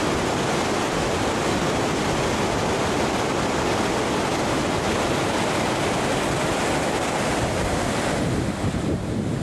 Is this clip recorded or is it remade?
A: recorded